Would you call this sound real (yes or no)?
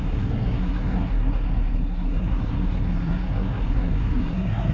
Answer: no